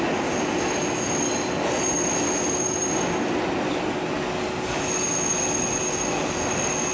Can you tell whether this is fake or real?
real